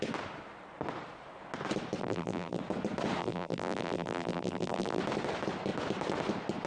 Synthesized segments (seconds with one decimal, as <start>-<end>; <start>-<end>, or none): 2.0-2.6; 3.2-5.0